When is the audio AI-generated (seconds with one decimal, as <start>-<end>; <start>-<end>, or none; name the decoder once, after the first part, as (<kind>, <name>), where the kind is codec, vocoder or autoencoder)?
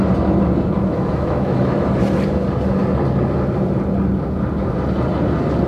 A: 0.9-1.9 (autoencoder, DAC-VAE)